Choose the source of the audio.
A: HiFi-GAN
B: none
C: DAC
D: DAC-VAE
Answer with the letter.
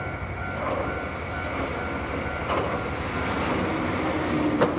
B